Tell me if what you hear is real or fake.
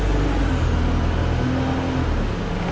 real